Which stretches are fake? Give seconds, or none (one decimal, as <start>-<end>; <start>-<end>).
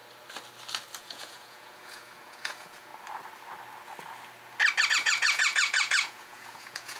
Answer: 1.0-2.9; 4.9-7.0